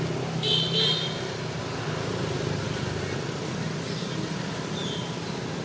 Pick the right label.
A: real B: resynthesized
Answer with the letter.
A